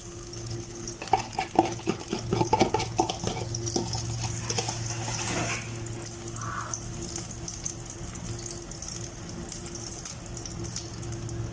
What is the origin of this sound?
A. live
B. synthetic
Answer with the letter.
A